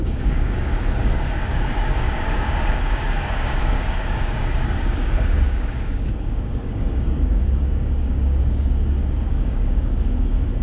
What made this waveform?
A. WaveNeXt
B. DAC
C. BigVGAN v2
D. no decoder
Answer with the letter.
B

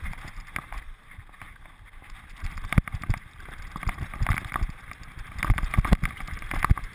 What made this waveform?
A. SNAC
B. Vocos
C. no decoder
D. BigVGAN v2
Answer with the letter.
C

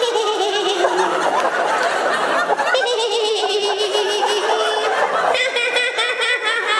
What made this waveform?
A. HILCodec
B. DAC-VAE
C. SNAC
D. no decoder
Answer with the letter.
D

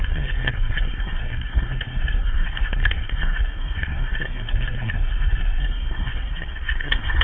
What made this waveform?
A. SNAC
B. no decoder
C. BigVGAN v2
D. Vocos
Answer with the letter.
A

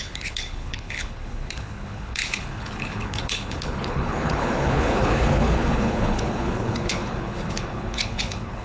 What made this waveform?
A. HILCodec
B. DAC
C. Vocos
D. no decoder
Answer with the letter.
A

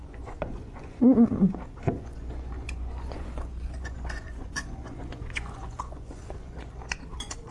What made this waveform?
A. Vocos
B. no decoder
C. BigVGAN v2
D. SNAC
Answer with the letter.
A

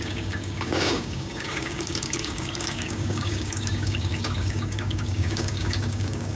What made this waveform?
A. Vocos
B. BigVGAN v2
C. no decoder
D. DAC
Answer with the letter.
D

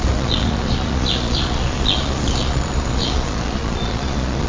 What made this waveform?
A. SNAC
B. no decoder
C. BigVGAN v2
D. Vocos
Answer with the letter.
D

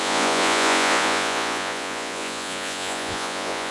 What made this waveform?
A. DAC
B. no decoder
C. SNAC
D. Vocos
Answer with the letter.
D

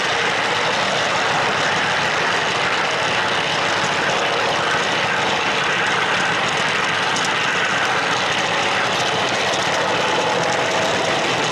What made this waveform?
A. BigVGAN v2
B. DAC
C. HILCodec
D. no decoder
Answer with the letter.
D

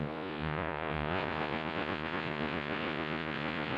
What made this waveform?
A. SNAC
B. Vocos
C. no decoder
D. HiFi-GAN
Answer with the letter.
B